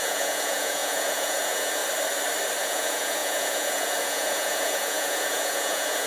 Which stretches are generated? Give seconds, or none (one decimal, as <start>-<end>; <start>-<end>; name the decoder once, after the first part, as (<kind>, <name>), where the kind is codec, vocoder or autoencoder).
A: 0.0-1.8 (vocoder, Vocos); 2.6-6.1